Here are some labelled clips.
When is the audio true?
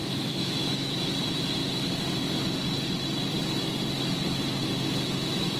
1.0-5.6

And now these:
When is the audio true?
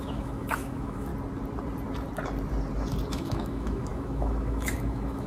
1.1-3.1